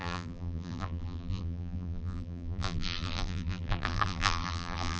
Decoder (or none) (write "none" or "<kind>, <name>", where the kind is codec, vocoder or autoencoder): vocoder, BigVGAN v2